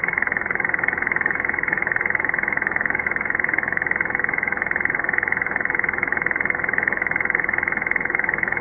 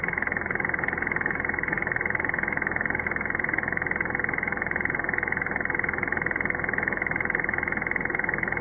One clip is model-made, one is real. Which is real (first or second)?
second